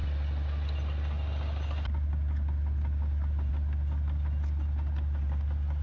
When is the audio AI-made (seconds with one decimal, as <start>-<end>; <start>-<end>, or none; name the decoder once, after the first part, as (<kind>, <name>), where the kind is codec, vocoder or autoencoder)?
none